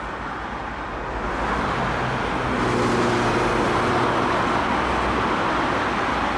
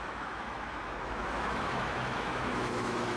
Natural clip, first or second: first